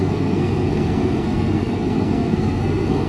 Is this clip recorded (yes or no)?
no